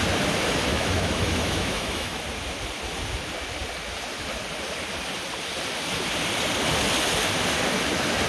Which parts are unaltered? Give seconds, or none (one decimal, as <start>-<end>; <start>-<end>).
0.0-0.7; 2.2-8.3